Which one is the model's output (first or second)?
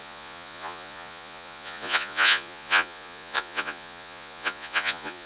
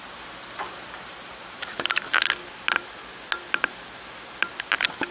first